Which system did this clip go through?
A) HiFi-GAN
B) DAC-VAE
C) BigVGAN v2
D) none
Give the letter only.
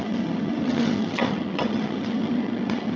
A